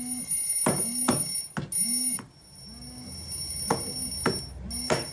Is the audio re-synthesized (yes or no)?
no